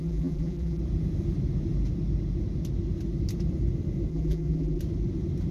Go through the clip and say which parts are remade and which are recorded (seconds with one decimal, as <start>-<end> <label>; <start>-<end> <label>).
0.0-0.8 remade; 0.8-4.1 recorded; 4.1-4.8 remade; 4.8-5.5 recorded